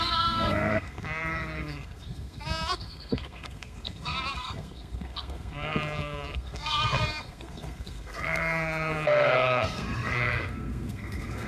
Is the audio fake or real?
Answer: fake